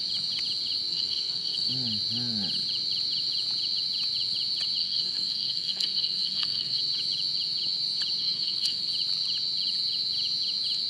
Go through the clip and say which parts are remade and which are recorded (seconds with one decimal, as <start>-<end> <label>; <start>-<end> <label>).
0.0-0.9 recorded; 0.9-1.7 remade; 1.7-4.8 recorded; 4.8-6.8 remade; 6.8-8.2 recorded; 8.2-8.9 remade; 8.9-10.9 recorded